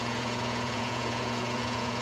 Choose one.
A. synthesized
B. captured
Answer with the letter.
A